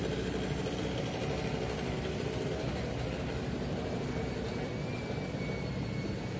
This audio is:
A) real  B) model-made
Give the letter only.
A